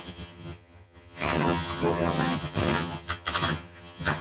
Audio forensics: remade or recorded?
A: remade